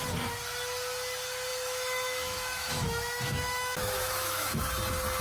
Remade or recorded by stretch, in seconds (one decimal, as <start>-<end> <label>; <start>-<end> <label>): 0.0-1.5 recorded; 1.5-4.6 remade; 4.6-5.2 recorded